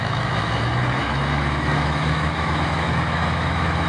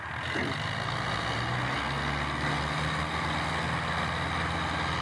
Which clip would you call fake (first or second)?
first